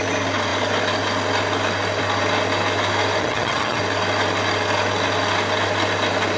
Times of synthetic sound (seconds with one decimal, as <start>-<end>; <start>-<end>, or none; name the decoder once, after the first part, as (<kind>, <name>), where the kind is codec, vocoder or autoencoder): 3.2-3.8 (vocoder, HiFi-GAN)